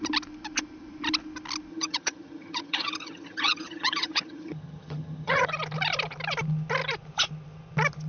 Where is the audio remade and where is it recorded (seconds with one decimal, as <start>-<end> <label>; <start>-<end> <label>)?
0.0-1.7 recorded; 1.7-5.5 remade; 5.5-8.1 recorded